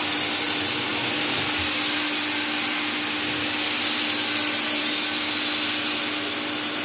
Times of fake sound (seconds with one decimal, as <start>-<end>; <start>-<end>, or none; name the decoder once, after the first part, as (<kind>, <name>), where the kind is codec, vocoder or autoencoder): none